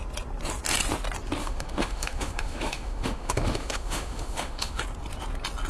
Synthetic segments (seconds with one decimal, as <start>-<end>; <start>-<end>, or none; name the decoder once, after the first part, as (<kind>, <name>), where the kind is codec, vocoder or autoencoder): 1.4-4.8 (autoencoder, DAC-VAE)